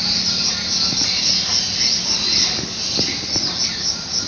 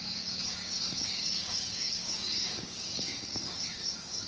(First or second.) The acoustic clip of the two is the first